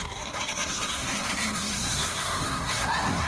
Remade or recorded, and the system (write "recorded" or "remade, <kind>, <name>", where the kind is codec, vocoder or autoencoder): remade, codec, SNAC